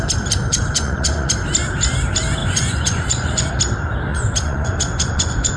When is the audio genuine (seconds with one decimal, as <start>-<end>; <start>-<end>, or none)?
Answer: 0.0-0.5; 1.3-2.4; 3.5-4.1